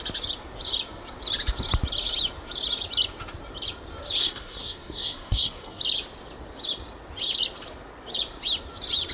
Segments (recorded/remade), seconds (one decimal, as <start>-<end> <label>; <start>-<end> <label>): 0.0-4.2 recorded; 4.2-5.8 remade; 5.8-9.1 recorded